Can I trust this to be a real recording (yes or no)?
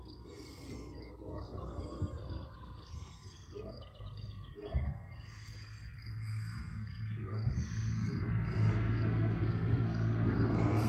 no